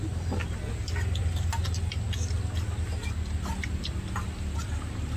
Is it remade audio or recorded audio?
recorded